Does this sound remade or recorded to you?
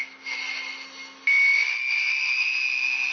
recorded